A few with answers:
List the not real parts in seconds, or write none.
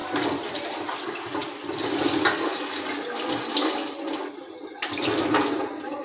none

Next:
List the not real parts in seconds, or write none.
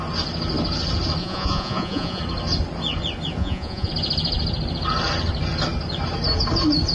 1.2-2.2 (vocoder, Vocos); 3.4-3.9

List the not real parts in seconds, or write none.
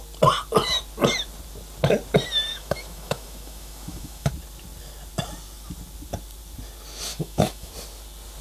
2.5-4.3 (autoencoder, DAC-VAE); 7.1-7.7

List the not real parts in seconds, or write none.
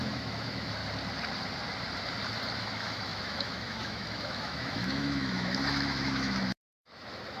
0.0-0.8 (autoencoder, DAC-VAE); 2.6-7.4